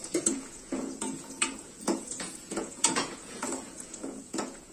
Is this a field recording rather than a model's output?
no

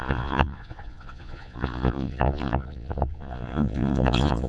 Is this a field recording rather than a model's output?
no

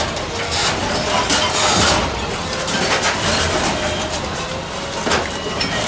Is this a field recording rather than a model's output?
yes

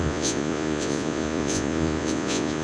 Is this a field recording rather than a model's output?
no